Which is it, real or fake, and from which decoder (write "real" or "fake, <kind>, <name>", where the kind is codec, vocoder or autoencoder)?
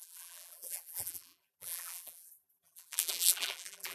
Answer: fake, vocoder, BigVGAN v2